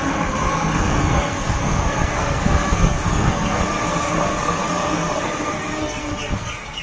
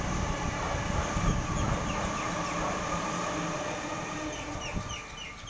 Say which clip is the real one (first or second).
second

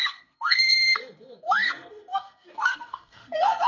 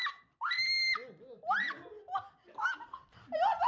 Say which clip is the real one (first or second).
second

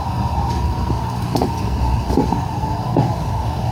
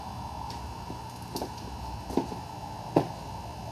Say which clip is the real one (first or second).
second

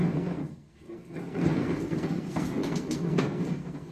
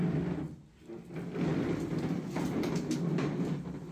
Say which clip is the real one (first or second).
second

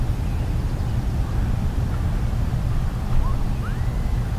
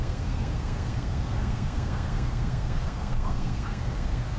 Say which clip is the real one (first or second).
first